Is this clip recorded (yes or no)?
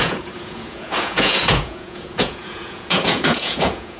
no